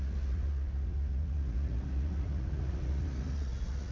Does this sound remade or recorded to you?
remade